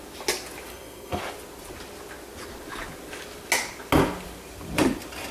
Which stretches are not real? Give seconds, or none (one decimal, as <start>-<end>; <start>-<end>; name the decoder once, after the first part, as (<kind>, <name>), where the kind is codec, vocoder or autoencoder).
0.7-1.2 (codec, SNAC)